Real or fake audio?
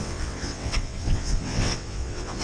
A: fake